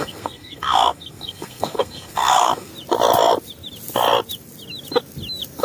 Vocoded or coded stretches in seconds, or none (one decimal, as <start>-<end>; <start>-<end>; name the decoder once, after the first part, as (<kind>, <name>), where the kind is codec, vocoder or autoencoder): 0.0-2.7 (codec, SNAC)